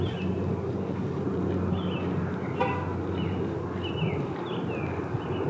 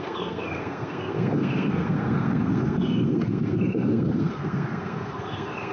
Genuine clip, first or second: first